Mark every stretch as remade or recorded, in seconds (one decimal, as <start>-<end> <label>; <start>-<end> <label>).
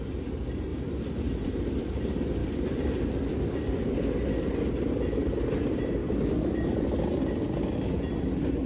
0.0-0.7 recorded; 0.7-1.6 remade; 1.6-2.4 recorded; 2.4-4.5 remade; 4.5-6.0 recorded; 6.0-6.6 remade; 6.6-8.7 recorded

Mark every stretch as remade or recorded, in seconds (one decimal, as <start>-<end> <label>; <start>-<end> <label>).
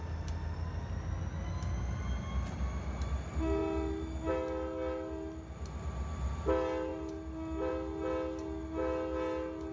0.0-9.7 recorded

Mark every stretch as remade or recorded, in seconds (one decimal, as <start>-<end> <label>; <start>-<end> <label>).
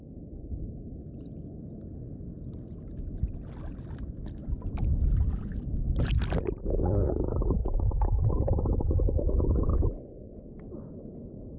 0.0-11.6 recorded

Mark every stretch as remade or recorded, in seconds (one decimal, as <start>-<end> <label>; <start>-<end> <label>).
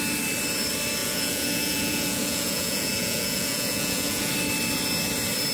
0.0-1.0 recorded; 1.0-4.3 remade; 4.3-5.5 recorded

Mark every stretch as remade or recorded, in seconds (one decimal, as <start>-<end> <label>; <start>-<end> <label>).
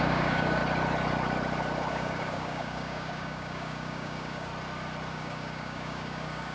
0.0-0.6 remade; 0.6-1.9 recorded; 1.9-4.5 remade; 4.5-5.1 recorded; 5.1-6.5 remade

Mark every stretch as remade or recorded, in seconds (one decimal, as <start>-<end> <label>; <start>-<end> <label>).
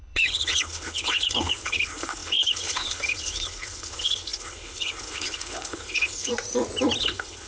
0.0-6.3 remade; 6.3-7.0 recorded; 7.0-7.5 remade